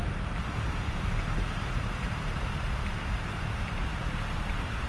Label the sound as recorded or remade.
remade